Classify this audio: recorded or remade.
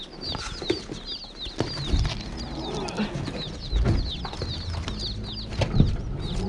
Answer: recorded